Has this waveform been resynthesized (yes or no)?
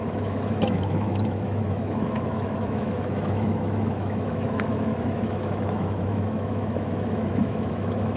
yes